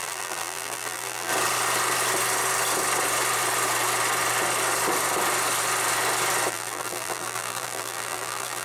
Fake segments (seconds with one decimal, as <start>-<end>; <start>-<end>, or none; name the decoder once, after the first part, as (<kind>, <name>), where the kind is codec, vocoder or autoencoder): 0.0-1.3 (vocoder, BigVGAN v2); 6.5-8.6